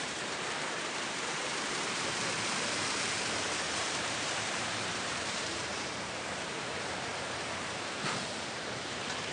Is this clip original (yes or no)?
no